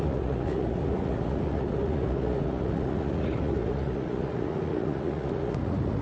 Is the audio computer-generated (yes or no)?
yes